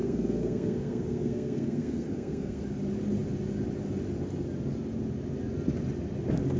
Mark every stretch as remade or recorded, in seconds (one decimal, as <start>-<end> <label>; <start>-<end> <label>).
0.0-2.6 remade; 2.6-6.6 recorded